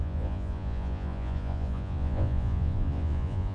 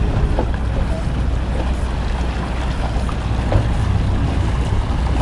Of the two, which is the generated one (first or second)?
first